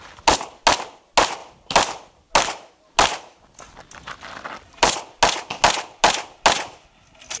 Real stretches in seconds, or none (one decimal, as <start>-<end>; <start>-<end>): 0.0-7.4